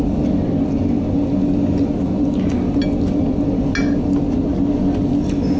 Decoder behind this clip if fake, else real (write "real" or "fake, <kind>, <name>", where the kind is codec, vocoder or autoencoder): real